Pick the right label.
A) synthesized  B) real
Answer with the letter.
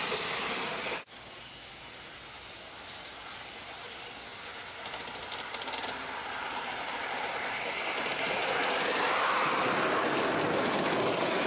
B